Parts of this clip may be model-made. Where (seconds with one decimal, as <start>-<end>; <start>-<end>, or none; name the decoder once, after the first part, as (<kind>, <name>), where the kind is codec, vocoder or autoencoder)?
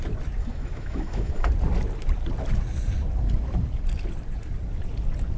0.4-1.5 (autoencoder, DAC-VAE)